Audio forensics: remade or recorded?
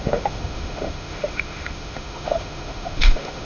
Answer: remade